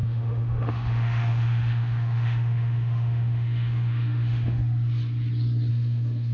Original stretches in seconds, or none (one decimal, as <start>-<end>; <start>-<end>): 4.6-5.7